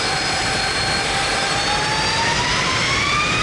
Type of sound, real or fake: real